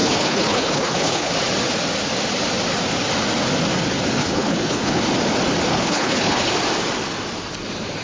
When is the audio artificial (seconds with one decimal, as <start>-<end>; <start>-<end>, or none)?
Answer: 0.0-1.3; 4.2-5.0; 5.7-6.5